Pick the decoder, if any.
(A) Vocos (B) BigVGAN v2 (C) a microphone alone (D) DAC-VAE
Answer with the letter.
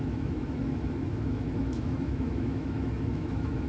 D